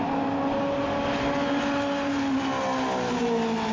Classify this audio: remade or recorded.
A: recorded